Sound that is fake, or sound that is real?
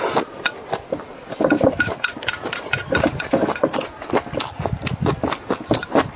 real